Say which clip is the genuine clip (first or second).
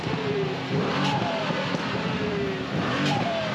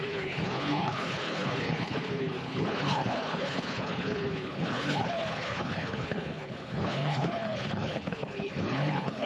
first